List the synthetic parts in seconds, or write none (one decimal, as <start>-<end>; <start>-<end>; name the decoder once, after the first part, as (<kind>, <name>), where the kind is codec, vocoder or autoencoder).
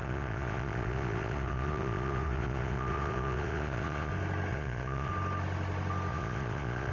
0.0-4.1 (vocoder, Vocos); 4.5-5.1; 6.1-6.9